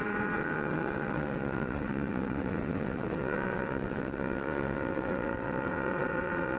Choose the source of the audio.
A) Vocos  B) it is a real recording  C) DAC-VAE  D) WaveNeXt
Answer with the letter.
D